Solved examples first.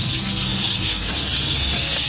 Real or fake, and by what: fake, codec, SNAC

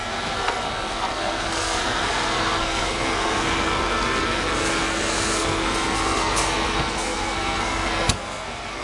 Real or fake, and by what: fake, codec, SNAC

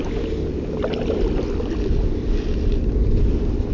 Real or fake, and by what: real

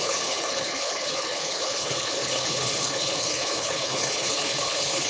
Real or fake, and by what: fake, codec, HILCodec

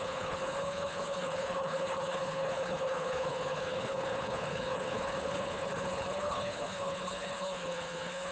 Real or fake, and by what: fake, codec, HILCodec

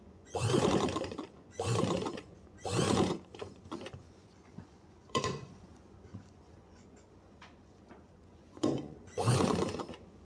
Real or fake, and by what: fake, vocoder, Vocos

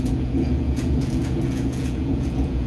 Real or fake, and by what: fake, vocoder, Vocos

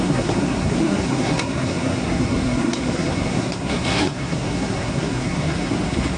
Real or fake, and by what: fake, codec, SNAC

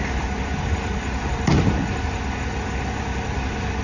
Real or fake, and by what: real